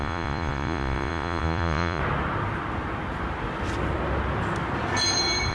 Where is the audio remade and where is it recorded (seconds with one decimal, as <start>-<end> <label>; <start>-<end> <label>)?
0.0-2.0 remade; 2.0-5.5 recorded